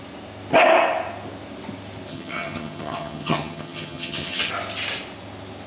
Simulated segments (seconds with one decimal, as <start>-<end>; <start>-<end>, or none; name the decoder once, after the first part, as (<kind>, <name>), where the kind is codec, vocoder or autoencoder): 2.1-4.5 (vocoder, HiFi-GAN)